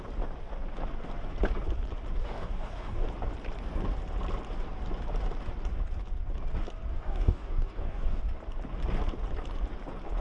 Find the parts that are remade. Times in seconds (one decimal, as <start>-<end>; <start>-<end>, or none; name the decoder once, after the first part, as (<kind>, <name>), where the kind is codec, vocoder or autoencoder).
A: 2.2-3.1 (codec, DAC); 6.9-8.2